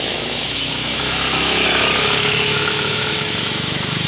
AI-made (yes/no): yes